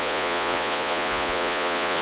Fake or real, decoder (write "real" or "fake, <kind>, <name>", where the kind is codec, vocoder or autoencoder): fake, vocoder, Vocos